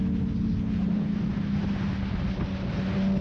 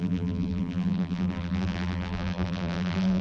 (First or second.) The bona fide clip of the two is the first